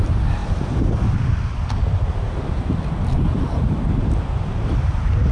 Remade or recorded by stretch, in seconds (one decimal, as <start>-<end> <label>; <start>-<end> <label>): 0.0-5.3 recorded